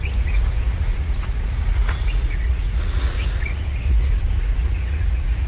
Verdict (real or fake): fake